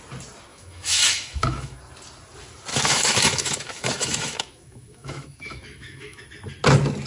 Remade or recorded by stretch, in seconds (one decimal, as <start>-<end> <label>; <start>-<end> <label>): 0.0-0.5 recorded; 0.5-1.8 remade; 1.8-2.7 recorded; 2.7-6.2 remade; 6.2-7.1 recorded